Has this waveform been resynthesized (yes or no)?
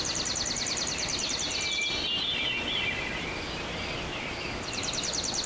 no